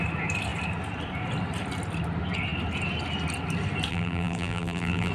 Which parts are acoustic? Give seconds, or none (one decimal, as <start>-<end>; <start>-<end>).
0.0-3.9